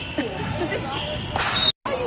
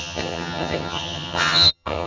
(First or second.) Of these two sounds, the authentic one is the first